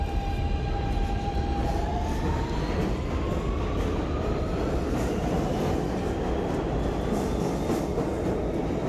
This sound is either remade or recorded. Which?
recorded